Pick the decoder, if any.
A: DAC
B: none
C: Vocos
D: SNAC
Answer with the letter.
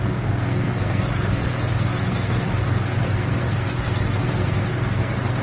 D